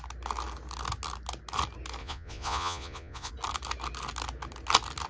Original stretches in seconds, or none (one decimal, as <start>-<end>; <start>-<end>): 0.0-2.0; 3.3-5.1